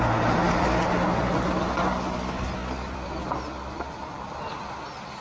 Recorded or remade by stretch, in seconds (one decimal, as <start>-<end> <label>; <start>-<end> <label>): 0.0-2.6 recorded; 2.6-4.5 remade; 4.5-5.2 recorded